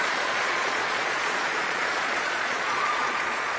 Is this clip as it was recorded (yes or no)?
no